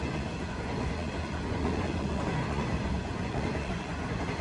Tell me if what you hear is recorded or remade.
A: remade